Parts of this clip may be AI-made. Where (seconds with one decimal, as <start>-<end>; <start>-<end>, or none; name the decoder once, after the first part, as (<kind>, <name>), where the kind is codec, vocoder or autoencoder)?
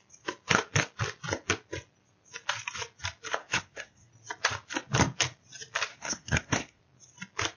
3.4-4.1 (codec, SNAC); 5.9-6.8